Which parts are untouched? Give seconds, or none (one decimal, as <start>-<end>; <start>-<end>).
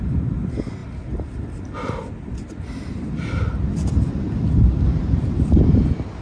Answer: 0.0-6.2